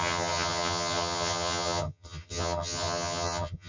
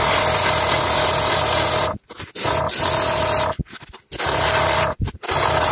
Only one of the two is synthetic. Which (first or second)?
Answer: first